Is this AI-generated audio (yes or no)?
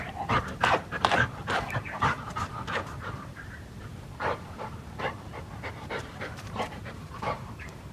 yes